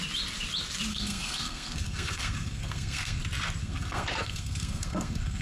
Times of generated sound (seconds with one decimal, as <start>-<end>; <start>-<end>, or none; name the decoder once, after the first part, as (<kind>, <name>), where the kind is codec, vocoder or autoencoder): 0.9-3.2 (codec, SNAC); 3.6-5.4